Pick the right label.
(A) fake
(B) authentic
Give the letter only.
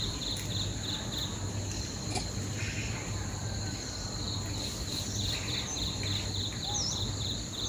B